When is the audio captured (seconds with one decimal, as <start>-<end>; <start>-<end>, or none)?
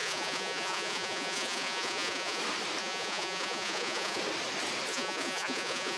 2.4-2.8; 4.2-4.9